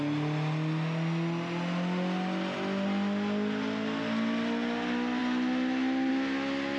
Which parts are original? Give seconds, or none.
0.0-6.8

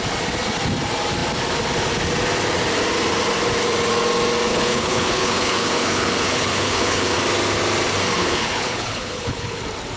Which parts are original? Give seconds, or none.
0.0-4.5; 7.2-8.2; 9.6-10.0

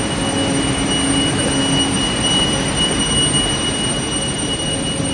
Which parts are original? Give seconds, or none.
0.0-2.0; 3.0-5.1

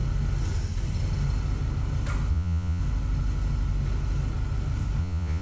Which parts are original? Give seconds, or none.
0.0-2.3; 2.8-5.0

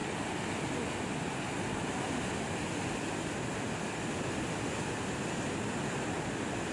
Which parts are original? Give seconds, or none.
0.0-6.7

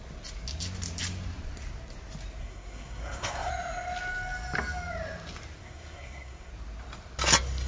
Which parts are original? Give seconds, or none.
0.0-2.4; 3.5-5.6; 6.5-7.7

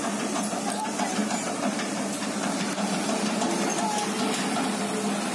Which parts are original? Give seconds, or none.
0.0-1.2; 3.5-5.3

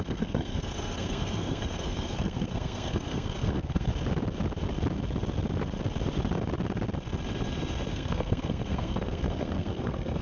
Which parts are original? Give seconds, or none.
3.9-7.9